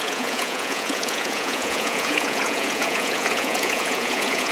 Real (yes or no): no